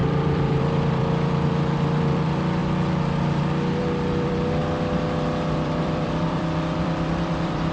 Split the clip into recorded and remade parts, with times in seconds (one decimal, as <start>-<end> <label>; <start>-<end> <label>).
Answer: 0.0-2.6 remade; 2.6-3.8 recorded; 3.8-4.6 remade; 4.6-5.4 recorded; 5.4-7.7 remade